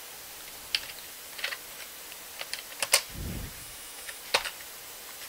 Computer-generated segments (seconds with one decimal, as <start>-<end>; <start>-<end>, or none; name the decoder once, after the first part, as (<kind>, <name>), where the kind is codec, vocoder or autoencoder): 3.6-4.2 (autoencoder, DAC-VAE)